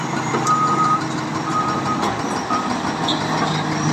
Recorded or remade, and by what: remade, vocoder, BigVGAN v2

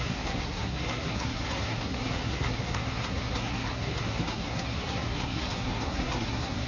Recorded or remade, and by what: remade, codec, SNAC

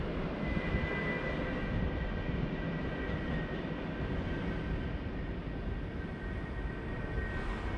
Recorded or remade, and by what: recorded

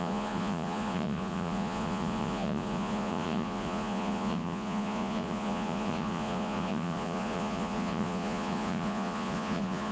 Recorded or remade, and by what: remade, vocoder, Vocos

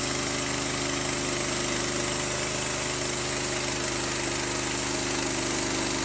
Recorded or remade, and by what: recorded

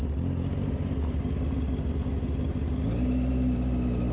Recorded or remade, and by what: recorded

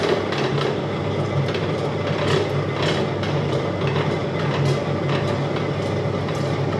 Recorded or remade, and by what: recorded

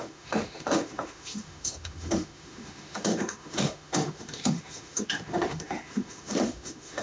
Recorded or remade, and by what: remade, autoencoder, DAC-VAE